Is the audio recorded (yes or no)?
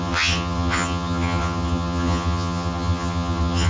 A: no